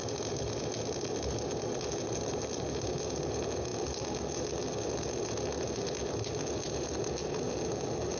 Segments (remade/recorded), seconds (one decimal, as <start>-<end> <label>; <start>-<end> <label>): 0.0-8.2 recorded